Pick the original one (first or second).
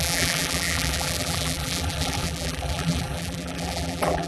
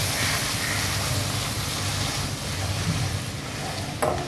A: second